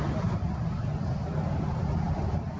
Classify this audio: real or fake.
fake